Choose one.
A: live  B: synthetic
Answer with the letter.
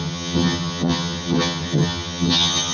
B